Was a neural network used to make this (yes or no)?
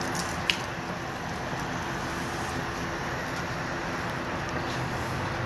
no